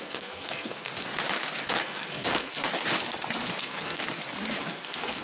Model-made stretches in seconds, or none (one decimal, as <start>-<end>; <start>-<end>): 0.0-0.9; 1.8-2.5; 3.6-4.0; 4.6-5.2